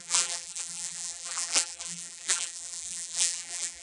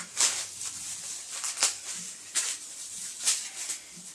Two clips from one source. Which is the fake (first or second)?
first